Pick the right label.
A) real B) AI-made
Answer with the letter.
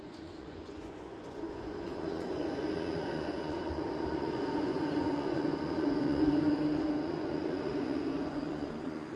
B